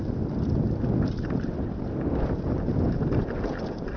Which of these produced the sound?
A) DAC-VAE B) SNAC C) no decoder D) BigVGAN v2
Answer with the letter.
C